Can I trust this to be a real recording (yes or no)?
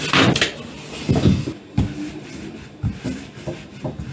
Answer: yes